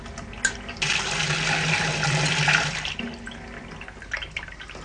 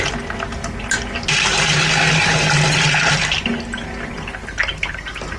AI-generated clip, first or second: first